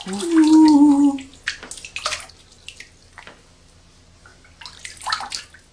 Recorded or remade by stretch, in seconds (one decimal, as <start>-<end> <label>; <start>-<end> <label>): 0.0-5.7 recorded